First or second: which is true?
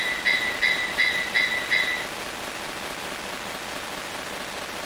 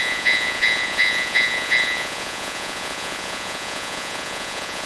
first